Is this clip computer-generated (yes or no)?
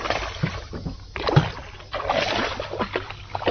no